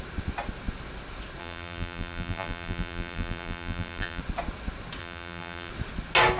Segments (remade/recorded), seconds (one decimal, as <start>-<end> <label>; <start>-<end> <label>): 0.0-1.4 recorded; 1.4-4.2 remade; 4.2-5.0 recorded; 5.0-5.7 remade; 5.7-6.4 recorded